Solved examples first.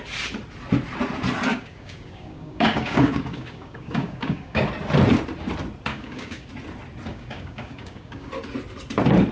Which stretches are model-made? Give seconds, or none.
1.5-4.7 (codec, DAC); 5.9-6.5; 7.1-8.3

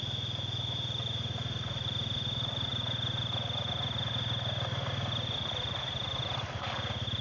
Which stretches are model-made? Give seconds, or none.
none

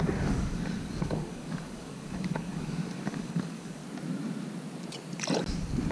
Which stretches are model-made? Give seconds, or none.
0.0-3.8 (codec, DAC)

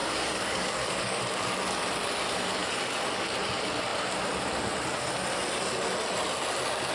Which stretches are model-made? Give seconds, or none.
0.0-1.2 (codec, DAC)

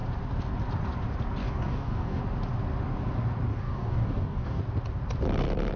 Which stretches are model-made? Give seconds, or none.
1.4-2.2 (codec, DAC); 3.5-4.6